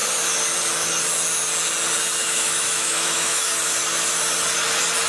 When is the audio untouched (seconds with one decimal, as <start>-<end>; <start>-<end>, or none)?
0.0-2.2; 3.5-5.1